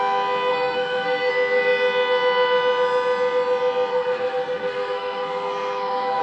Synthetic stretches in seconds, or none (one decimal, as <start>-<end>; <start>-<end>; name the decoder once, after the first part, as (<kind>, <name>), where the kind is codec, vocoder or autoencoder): 0.5-1.3 (codec, SNAC); 3.9-6.2